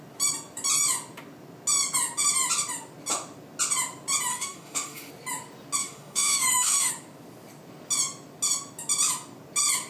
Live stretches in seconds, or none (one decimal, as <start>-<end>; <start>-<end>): 0.0-4.3; 5.1-5.8; 6.9-9.9

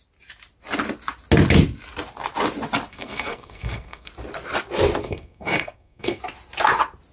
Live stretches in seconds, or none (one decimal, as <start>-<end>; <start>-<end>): 0.0-2.9; 4.1-5.0; 6.2-7.1

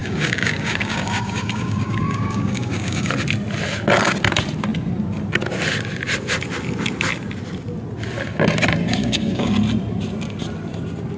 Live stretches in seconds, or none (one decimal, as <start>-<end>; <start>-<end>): 3.1-9.0; 9.5-11.2

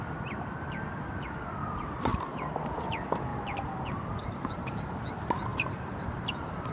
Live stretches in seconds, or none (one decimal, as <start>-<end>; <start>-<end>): 0.0-2.1; 2.6-5.5; 6.3-6.7

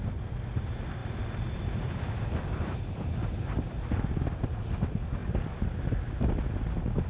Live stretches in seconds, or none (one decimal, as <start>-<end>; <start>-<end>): 0.0-7.1